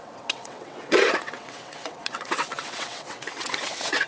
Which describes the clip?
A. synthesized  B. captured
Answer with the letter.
A